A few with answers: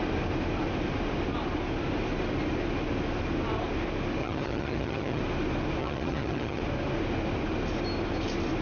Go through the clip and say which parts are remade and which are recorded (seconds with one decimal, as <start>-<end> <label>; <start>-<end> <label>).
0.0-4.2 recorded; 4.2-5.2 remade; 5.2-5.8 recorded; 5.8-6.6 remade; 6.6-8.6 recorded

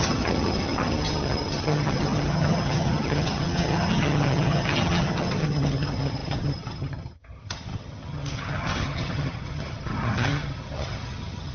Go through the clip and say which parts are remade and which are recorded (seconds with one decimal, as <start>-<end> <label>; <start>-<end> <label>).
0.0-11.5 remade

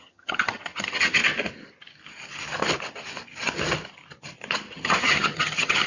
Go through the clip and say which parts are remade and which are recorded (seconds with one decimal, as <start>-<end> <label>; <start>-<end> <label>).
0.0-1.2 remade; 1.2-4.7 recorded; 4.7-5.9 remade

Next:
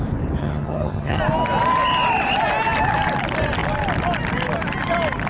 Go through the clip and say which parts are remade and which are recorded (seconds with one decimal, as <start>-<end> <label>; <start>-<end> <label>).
0.0-0.4 recorded; 0.4-1.2 remade; 1.2-5.3 recorded

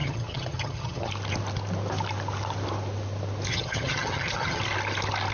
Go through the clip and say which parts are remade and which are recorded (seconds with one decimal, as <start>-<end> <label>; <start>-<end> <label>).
0.0-1.1 remade; 1.1-3.5 recorded; 3.5-4.6 remade; 4.6-5.3 recorded